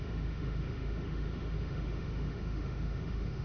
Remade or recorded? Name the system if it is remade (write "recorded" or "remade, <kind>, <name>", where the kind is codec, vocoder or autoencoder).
remade, autoencoder, DAC-VAE